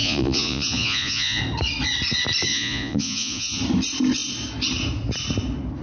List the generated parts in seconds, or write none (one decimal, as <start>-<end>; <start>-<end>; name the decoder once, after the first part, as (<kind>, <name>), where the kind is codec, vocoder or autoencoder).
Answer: 0.0-1.4 (vocoder, Vocos); 2.5-3.6

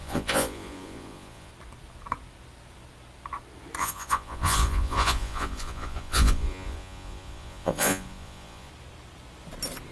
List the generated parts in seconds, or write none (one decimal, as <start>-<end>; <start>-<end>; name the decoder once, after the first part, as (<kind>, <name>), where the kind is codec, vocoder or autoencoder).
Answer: 0.0-1.5 (vocoder, Vocos); 3.8-8.7

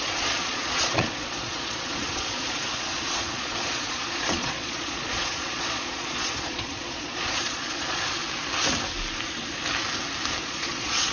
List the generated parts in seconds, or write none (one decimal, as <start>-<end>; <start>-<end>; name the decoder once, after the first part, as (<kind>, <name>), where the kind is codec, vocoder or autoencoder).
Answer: 0.0-8.2 (vocoder, Vocos); 10.4-11.1

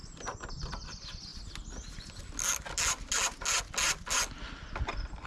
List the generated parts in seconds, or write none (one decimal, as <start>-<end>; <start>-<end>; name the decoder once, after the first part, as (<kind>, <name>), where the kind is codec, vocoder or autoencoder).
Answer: none

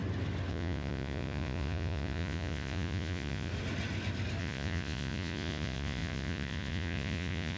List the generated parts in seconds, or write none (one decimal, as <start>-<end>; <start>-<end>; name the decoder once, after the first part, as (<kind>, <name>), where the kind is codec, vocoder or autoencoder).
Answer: 0.5-3.5 (vocoder, Vocos); 4.4-7.6

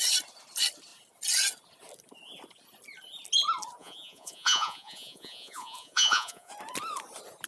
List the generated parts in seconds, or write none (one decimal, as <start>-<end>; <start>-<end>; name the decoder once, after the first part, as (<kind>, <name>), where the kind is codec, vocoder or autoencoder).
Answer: 3.8-6.5 (vocoder, Vocos)

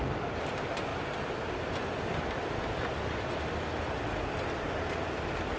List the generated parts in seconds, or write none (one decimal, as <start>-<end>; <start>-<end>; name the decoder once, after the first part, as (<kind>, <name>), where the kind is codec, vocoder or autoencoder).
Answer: none